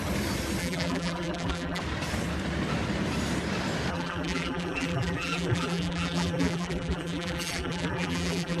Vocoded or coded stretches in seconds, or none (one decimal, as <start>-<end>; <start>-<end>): 0.6-1.8; 3.9-8.6